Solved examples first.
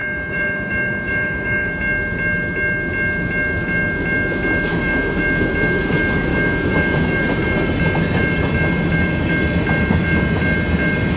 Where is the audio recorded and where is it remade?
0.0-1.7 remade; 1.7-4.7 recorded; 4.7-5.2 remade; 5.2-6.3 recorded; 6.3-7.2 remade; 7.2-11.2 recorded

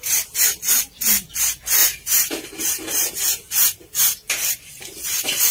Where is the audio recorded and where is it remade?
0.0-1.8 recorded; 1.8-4.8 remade; 4.8-5.5 recorded